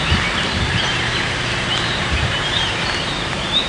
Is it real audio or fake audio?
fake